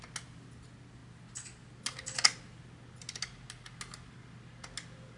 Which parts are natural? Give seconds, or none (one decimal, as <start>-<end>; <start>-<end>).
0.0-5.2